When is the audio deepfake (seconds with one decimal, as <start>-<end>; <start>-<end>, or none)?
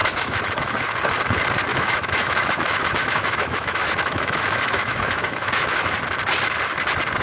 0.0-0.7; 1.7-6.0